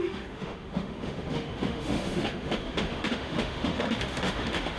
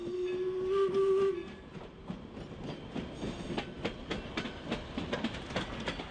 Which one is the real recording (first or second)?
second